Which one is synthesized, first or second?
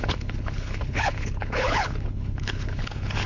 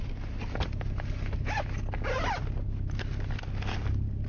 first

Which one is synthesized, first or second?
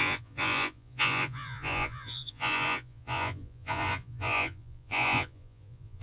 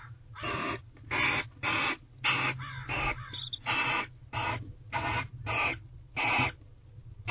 first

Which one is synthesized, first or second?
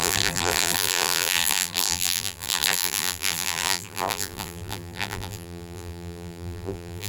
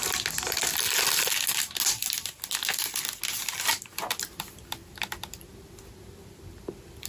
first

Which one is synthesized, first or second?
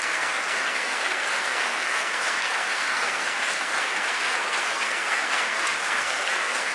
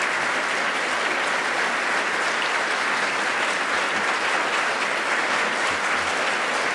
first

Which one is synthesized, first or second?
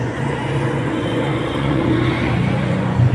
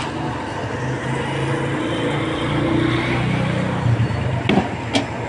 first